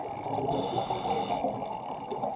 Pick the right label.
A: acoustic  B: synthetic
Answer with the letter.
A